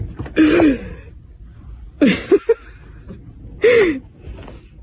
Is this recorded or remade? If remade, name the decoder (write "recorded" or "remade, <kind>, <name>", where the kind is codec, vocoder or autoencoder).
recorded